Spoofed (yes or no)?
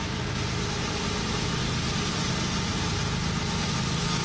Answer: no